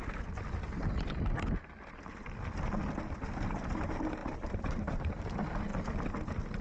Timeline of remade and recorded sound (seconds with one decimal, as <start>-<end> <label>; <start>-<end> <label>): 0.0-4.2 recorded; 4.2-5.2 remade; 5.2-6.6 recorded